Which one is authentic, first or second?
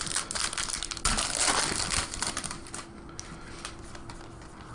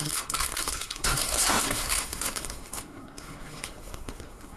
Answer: first